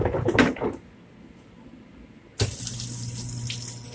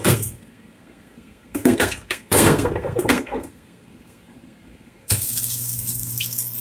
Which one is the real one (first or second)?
first